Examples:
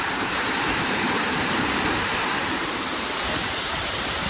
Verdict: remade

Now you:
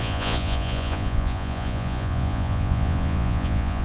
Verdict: remade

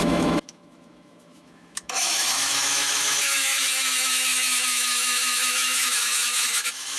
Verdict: remade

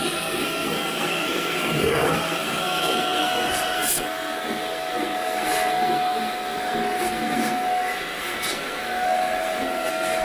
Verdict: remade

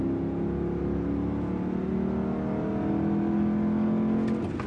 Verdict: recorded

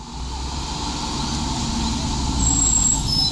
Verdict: recorded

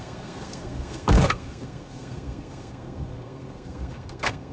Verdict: remade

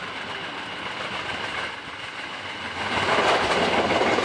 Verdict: recorded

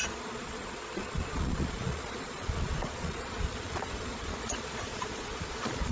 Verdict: remade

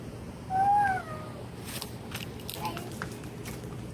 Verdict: recorded